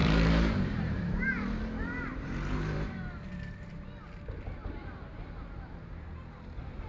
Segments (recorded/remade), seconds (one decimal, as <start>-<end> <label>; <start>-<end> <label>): 0.0-1.6 remade; 1.6-2.1 recorded; 2.1-2.9 remade; 2.9-6.9 recorded